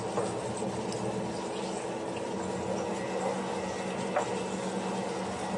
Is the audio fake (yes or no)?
no